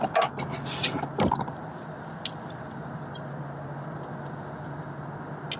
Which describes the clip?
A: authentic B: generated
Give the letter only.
A